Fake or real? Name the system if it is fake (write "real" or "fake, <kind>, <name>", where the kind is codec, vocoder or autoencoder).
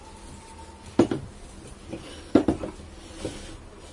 real